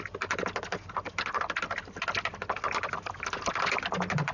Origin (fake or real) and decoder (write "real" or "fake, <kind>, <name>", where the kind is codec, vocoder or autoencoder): real